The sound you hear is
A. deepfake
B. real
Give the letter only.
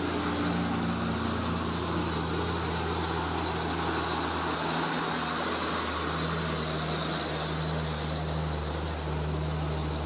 B